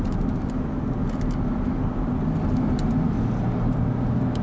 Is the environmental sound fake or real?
real